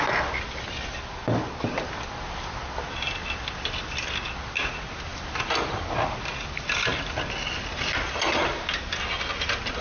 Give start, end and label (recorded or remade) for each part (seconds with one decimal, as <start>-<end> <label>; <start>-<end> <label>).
0.0-9.8 recorded